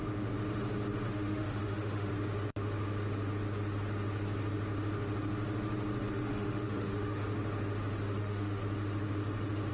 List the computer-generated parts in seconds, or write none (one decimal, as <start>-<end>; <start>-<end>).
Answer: 1.1-2.1; 6.1-7.2; 8.2-8.6